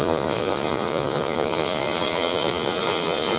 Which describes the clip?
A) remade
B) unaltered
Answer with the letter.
A